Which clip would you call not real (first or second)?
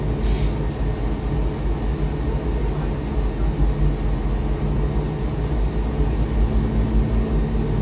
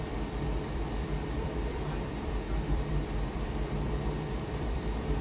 second